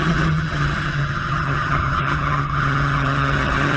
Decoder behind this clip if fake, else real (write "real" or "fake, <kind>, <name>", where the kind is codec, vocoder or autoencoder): fake, vocoder, HiFi-GAN